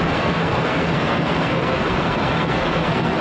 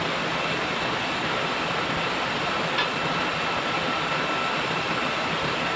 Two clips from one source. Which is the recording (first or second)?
second